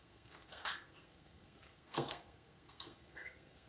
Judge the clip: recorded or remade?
remade